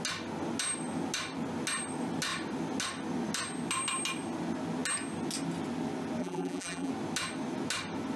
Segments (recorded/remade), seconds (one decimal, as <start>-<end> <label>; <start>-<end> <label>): 0.0-6.2 recorded; 6.2-6.9 remade; 6.9-8.2 recorded

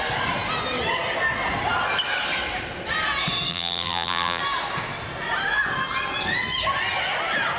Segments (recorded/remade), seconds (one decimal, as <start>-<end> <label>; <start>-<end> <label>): 0.0-3.5 recorded; 3.5-4.4 remade; 4.4-7.6 recorded

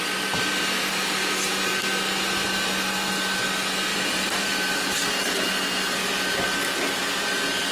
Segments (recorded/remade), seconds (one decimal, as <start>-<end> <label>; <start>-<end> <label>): 0.0-3.9 recorded; 3.9-5.6 remade; 5.6-7.7 recorded

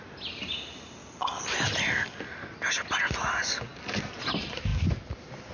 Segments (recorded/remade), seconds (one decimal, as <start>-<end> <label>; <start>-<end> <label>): 0.0-3.7 recorded; 3.7-4.2 remade; 4.2-4.7 recorded; 4.7-5.5 remade

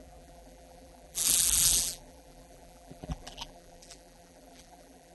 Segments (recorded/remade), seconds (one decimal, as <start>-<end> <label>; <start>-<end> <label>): 0.0-5.1 remade

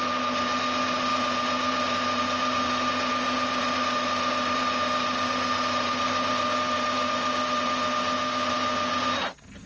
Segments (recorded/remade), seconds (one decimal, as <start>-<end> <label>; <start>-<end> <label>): 0.0-9.7 recorded

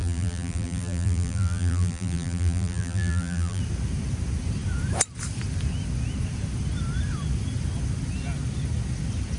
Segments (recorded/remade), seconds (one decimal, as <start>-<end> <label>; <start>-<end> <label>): 0.0-3.6 remade; 3.6-9.4 recorded

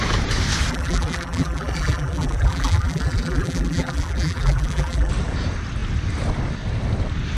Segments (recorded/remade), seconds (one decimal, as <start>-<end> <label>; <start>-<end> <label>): 0.0-0.7 recorded; 0.7-5.1 remade; 5.1-7.4 recorded